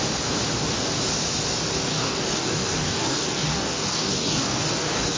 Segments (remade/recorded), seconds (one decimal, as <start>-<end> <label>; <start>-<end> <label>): 0.0-1.9 recorded; 1.9-5.2 remade